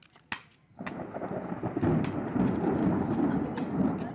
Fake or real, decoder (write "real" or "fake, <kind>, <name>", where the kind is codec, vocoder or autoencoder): real